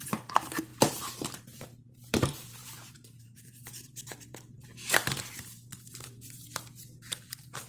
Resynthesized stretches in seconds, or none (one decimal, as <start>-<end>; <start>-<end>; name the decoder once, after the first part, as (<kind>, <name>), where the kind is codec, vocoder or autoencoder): 0.0-7.7 (vocoder, BigVGAN v2)